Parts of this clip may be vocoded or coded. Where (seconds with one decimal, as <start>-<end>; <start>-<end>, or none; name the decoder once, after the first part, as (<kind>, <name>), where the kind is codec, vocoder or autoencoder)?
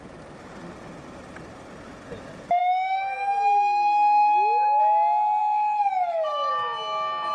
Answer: 2.6-4.8 (autoencoder, DAC-VAE); 5.4-6.5